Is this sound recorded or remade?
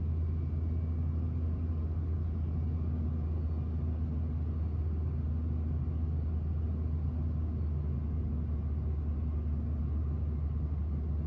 recorded